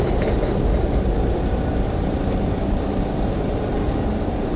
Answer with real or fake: fake